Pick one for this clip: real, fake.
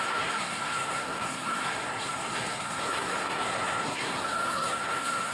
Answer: fake